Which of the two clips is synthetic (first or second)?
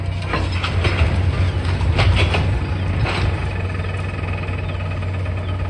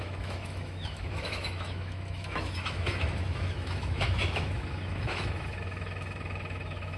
second